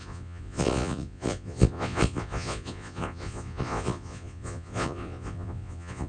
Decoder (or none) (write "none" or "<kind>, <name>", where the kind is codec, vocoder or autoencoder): vocoder, Vocos